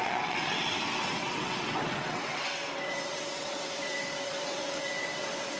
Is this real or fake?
fake